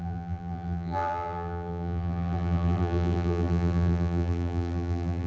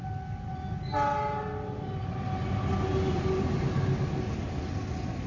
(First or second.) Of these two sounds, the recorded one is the second